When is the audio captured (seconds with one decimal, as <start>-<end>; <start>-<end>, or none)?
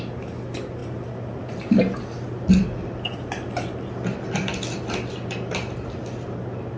0.0-6.8